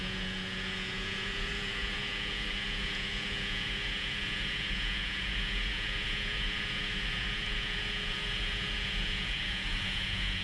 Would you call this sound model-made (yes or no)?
yes